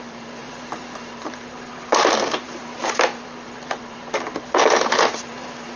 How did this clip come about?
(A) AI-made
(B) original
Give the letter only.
A